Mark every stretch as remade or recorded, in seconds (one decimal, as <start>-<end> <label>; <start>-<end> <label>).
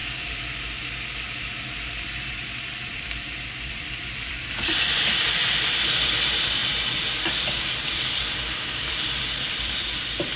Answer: 0.0-2.3 recorded; 2.3-6.6 remade; 6.6-7.3 recorded; 7.3-10.4 remade